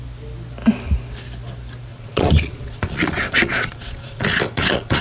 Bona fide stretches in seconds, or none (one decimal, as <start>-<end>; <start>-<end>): 0.0-1.9